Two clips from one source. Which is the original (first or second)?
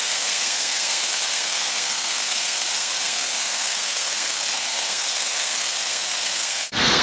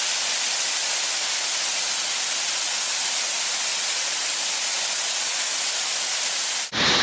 second